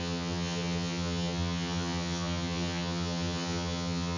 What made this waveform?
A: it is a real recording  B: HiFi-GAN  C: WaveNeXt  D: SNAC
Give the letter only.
B